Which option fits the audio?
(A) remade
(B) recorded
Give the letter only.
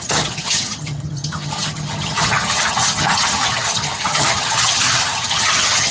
A